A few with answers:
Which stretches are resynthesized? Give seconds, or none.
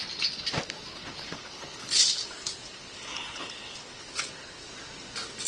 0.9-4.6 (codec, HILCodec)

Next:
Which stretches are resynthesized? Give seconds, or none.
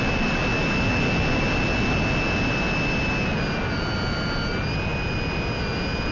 none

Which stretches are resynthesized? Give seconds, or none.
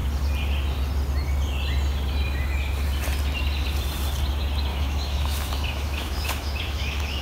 4.7-7.2 (autoencoder, DAC-VAE)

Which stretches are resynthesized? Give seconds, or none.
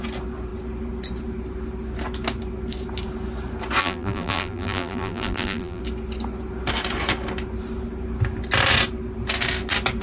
3.8-5.8 (vocoder, BigVGAN v2)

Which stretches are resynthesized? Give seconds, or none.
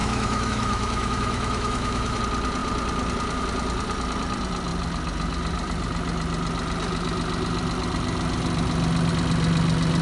0.0-2.2 (autoencoder, DAC-VAE)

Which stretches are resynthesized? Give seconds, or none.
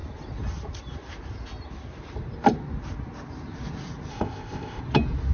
4.1-4.8 (codec, ZipCodec)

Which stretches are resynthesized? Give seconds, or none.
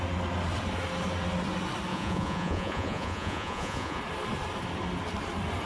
1.9-4.0 (vocoder, Vocos)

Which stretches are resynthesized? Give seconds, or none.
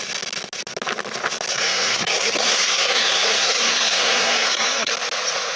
1.5-4.9 (codec, SNAC)